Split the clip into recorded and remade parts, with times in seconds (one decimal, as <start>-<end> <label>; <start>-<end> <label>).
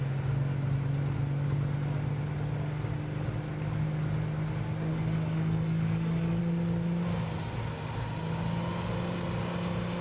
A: 0.0-4.9 recorded; 4.9-6.4 remade; 6.4-10.0 recorded